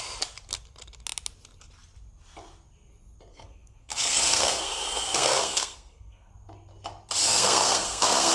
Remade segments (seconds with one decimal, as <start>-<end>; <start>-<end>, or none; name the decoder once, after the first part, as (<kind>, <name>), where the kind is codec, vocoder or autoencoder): 3.3-6.3 (codec, SNAC); 7.2-8.3